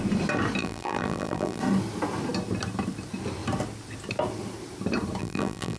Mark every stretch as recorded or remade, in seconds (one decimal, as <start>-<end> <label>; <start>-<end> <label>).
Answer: 0.0-0.6 recorded; 0.6-1.6 remade; 1.6-5.2 recorded; 5.2-5.8 remade